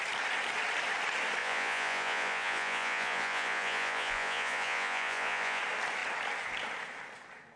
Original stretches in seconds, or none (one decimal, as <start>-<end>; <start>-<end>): 0.0-1.4; 5.6-7.6